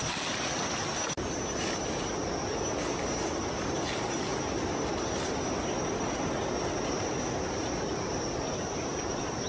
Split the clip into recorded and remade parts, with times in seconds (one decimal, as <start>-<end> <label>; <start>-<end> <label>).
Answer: 0.0-9.5 recorded